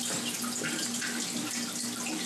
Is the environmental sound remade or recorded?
recorded